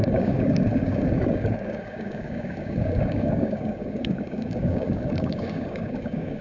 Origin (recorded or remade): remade